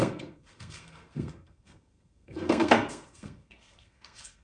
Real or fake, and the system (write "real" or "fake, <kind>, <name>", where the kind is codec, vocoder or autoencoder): fake, codec, SNAC